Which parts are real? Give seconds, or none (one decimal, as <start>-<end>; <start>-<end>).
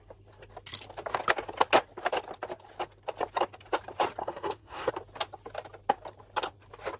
0.0-4.2; 4.9-7.0